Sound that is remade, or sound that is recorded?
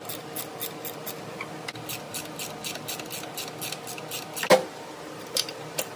recorded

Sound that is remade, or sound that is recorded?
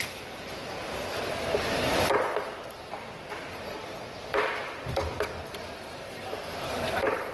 remade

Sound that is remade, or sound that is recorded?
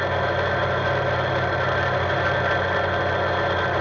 recorded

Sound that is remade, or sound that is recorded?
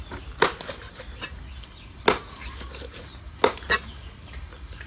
recorded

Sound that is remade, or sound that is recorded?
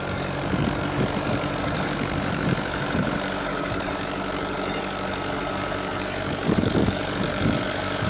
remade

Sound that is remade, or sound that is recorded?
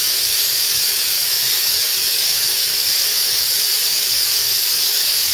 remade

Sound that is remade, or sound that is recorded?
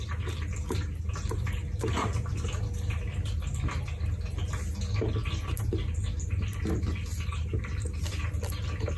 recorded